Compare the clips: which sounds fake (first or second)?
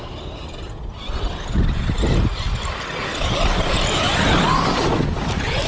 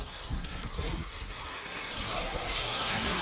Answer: second